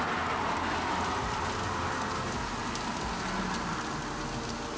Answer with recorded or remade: recorded